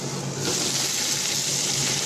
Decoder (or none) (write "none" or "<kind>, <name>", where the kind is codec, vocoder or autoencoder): none